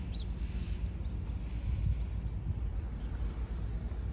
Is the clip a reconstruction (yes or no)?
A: no